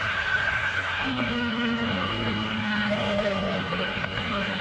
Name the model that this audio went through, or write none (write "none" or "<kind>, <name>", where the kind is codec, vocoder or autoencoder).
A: codec, SNAC